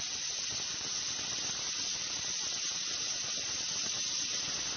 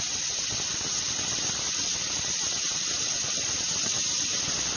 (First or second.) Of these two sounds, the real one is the first